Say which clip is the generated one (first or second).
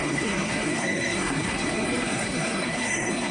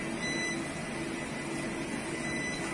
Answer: first